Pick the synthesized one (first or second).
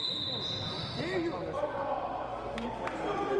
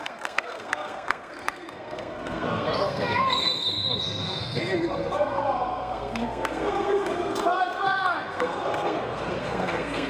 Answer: second